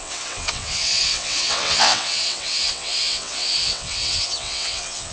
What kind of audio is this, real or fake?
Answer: fake